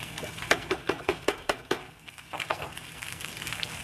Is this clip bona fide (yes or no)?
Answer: no